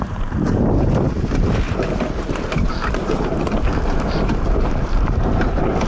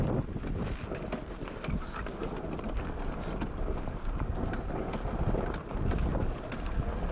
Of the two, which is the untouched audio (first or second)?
second